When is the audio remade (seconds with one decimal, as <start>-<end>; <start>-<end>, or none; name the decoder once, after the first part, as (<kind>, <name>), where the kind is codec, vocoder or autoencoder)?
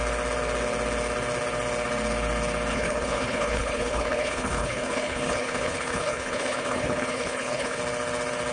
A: 2.7-7.8 (codec, HILCodec)